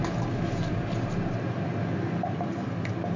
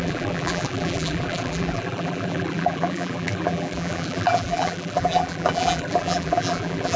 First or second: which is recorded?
first